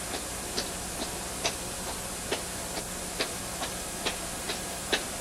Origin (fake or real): fake